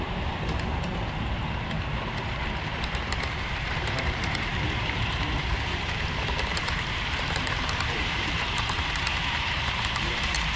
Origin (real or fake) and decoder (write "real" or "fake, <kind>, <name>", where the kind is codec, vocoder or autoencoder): fake, vocoder, BigVGAN v2